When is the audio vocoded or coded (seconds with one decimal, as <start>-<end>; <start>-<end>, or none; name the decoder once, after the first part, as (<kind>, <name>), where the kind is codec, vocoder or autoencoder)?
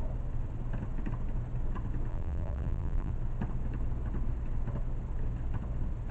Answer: 2.1-3.1 (vocoder, BigVGAN v2)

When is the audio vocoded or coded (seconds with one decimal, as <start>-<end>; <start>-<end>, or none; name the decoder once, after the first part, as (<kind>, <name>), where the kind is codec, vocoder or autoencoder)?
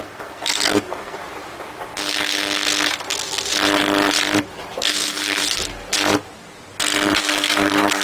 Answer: 0.0-1.2 (codec, SNAC); 4.8-5.4; 7.2-8.0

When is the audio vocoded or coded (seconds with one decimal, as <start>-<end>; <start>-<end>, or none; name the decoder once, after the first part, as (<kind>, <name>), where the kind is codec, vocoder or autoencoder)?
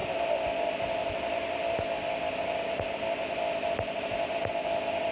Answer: none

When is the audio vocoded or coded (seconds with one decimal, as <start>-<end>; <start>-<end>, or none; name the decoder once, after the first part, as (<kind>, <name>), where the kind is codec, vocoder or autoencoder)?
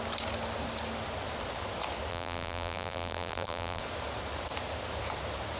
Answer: 2.1-3.8 (vocoder, BigVGAN v2)